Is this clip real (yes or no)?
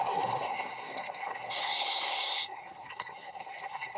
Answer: no